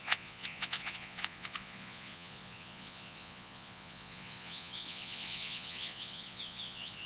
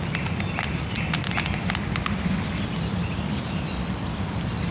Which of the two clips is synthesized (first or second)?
first